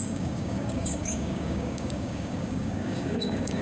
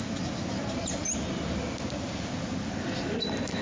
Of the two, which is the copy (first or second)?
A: first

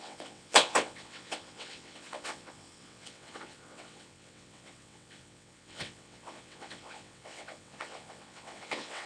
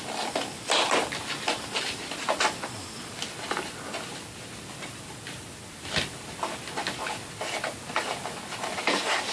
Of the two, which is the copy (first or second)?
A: first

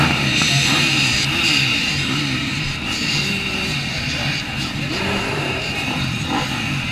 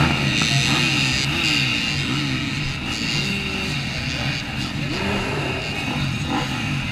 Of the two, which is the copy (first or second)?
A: first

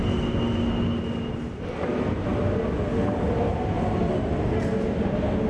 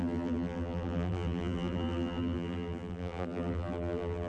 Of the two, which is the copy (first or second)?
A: second